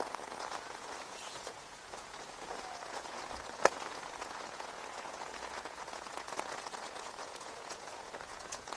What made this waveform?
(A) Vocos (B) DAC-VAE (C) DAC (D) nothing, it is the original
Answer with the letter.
A